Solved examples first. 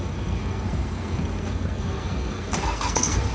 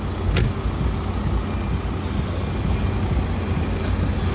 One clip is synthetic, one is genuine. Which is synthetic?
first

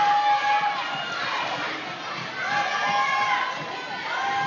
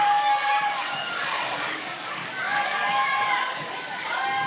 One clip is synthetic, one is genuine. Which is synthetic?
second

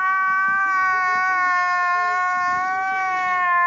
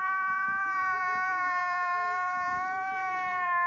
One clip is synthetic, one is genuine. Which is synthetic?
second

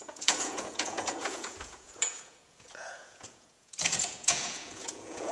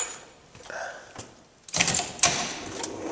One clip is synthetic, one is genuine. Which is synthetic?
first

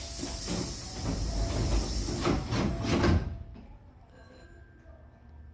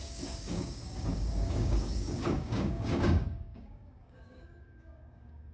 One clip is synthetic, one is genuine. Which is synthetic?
second